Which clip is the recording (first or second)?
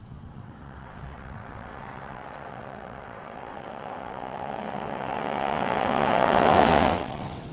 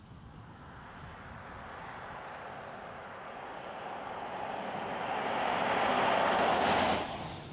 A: second